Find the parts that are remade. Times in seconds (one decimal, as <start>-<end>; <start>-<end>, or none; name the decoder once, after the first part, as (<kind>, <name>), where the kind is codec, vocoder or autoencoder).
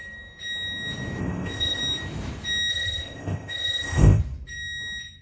1.2-1.8 (codec, ZipCodec); 2.7-4.2